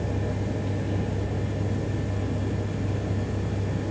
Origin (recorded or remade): recorded